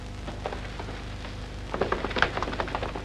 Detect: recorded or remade recorded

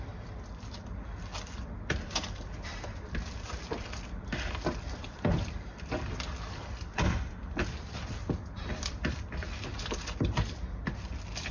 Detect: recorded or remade remade